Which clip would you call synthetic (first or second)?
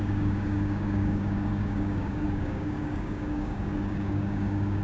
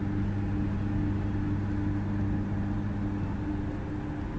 first